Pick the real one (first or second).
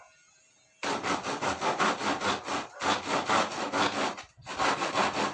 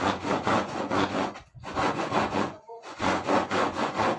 first